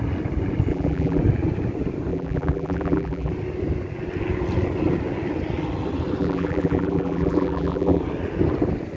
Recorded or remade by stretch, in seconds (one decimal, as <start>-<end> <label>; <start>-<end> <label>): 0.0-0.7 recorded; 0.7-1.2 remade; 1.2-2.1 recorded; 2.1-3.3 remade; 3.3-6.2 recorded; 6.2-8.0 remade; 8.0-9.0 recorded